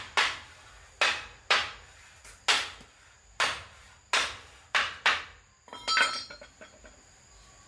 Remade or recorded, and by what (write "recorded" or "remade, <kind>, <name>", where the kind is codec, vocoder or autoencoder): recorded